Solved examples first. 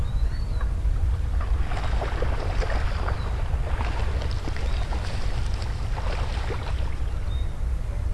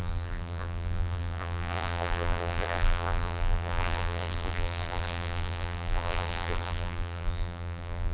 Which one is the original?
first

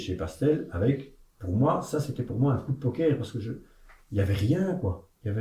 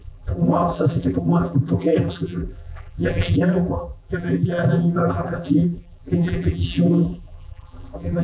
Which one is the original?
first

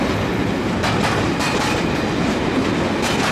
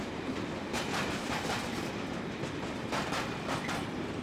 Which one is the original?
first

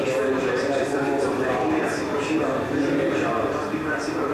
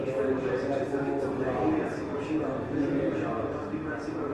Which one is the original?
second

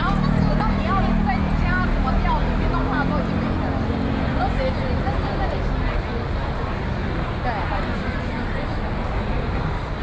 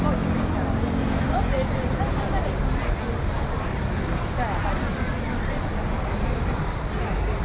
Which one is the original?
first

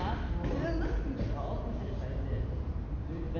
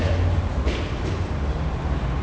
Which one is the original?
first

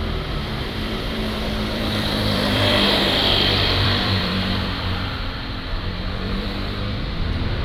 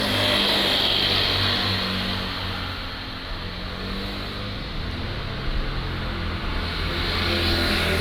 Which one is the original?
second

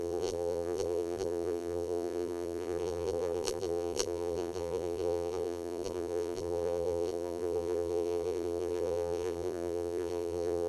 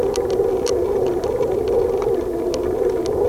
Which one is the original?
second